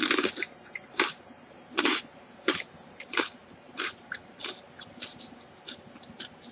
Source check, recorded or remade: remade